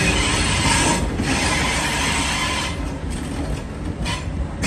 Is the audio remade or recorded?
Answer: recorded